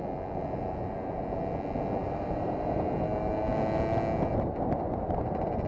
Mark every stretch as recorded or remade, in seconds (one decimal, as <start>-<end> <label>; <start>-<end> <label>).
0.0-2.0 recorded; 2.0-2.8 remade; 2.8-5.7 recorded